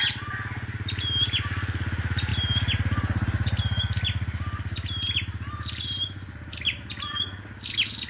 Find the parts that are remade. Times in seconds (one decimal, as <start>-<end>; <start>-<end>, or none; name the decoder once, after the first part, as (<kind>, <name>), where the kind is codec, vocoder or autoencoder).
none